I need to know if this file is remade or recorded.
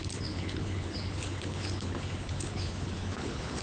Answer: remade